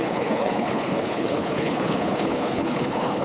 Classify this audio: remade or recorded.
remade